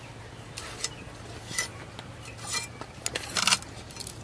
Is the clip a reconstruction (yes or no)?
no